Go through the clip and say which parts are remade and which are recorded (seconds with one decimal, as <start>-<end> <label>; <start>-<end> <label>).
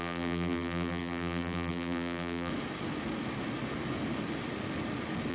0.0-2.5 remade; 2.5-5.3 recorded